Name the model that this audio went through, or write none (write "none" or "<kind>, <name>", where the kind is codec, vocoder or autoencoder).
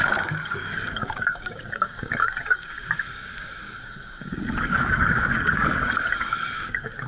codec, DAC